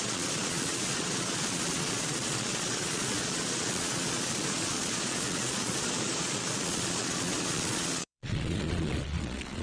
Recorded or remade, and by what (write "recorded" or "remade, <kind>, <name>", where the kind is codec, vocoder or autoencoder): remade, vocoder, Vocos